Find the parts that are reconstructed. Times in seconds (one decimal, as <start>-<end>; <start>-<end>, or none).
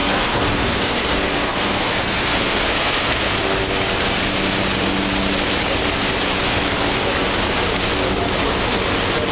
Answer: 0.0-3.3